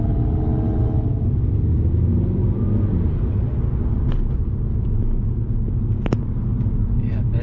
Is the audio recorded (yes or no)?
yes